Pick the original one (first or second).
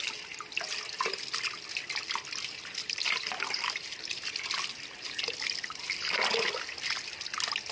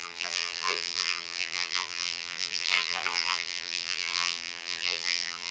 first